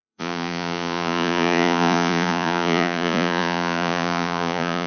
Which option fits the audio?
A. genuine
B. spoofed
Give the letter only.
B